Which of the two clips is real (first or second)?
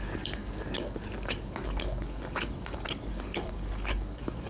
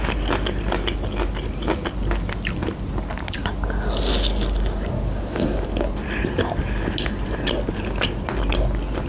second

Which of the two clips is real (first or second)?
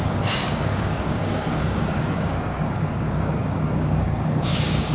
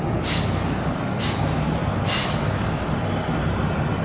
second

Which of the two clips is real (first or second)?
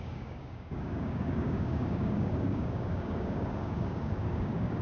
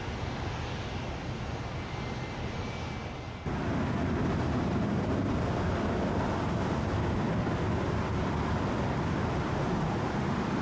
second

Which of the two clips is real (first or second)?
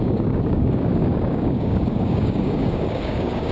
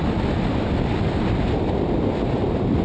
second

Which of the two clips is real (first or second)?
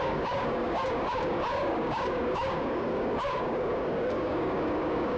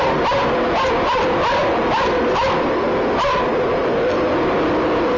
second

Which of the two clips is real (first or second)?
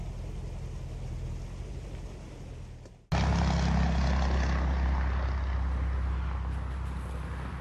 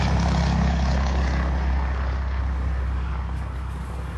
first